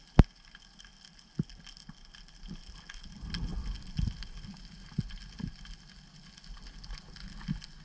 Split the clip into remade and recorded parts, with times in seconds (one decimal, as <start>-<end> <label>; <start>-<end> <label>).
0.0-7.8 recorded